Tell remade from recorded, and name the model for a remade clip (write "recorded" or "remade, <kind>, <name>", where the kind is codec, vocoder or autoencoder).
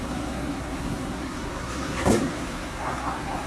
remade, codec, SNAC